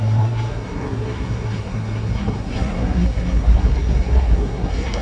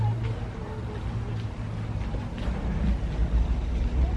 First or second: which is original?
second